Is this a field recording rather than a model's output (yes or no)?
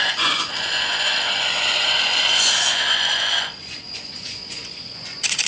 no